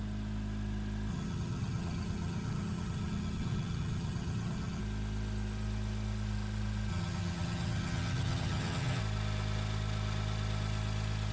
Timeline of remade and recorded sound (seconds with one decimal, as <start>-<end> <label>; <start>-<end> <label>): 0.0-1.1 recorded; 1.1-4.8 remade; 4.8-6.9 recorded; 6.9-9.0 remade; 9.0-11.3 recorded

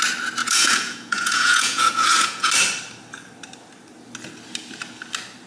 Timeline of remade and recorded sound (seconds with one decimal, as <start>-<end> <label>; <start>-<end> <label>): 0.0-0.4 recorded; 0.4-2.5 remade; 2.5-5.5 recorded

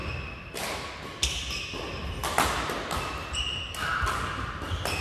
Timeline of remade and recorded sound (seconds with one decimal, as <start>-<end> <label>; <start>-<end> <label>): 0.0-5.0 recorded

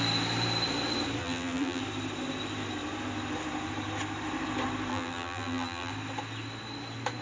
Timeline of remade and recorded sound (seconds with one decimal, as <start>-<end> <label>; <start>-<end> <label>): 0.0-1.2 recorded; 1.2-1.8 remade; 1.8-4.9 recorded; 4.9-5.9 remade; 5.9-7.2 recorded

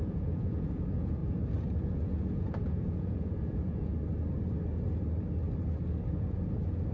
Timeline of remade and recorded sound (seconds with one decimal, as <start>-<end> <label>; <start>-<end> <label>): 0.0-1.2 remade; 1.2-1.8 recorded; 1.8-3.9 remade; 3.9-6.1 recorded; 6.1-6.9 remade

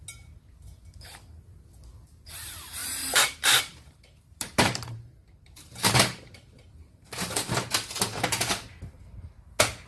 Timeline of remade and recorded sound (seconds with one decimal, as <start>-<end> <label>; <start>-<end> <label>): 0.0-2.8 recorded; 2.8-7.7 remade; 7.7-8.1 recorded; 8.1-8.8 remade; 8.8-9.9 recorded